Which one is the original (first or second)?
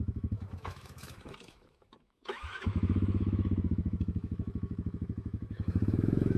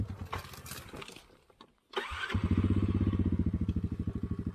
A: second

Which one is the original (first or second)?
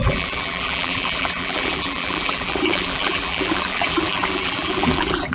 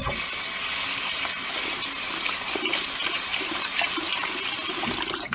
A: second